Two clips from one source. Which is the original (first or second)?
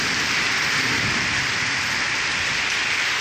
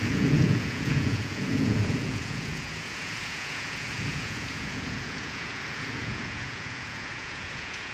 first